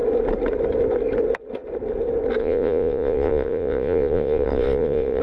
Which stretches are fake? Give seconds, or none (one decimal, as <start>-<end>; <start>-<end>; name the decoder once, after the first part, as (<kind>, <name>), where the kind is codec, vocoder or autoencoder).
2.4-5.2 (vocoder, Vocos)